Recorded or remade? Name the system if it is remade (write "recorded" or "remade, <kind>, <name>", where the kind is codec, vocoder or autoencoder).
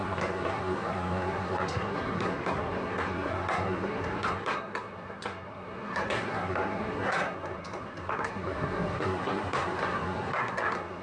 remade, codec, SNAC